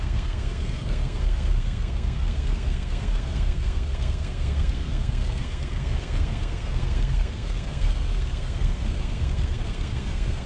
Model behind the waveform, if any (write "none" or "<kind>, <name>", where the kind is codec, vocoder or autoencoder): codec, SNAC